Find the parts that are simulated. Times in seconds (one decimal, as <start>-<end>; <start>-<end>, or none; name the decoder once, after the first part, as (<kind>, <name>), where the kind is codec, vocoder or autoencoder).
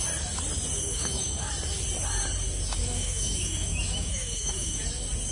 0.8-1.5 (autoencoder, DAC-VAE); 2.8-4.8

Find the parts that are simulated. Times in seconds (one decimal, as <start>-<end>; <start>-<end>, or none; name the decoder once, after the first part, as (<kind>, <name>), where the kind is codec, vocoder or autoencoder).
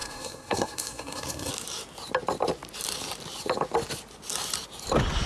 0.0-1.5 (codec, SNAC)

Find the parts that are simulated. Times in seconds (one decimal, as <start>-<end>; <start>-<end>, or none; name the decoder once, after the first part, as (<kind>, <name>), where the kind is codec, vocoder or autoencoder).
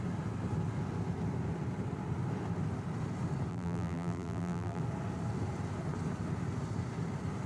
3.5-4.8 (vocoder, BigVGAN v2)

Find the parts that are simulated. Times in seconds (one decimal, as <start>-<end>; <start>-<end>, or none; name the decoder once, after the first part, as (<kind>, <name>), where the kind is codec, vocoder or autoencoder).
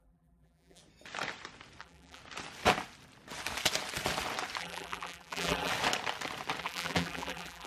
0.0-0.8 (vocoder, BigVGAN v2); 1.8-2.2; 4.6-5.7; 6.6-7.7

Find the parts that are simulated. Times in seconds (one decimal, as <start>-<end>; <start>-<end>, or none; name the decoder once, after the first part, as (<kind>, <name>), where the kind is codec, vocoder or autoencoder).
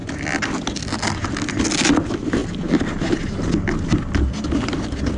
none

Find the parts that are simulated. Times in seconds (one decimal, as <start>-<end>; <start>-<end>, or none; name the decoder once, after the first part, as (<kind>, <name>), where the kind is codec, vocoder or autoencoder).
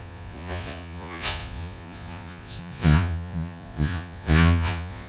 0.0-5.1 (vocoder, Vocos)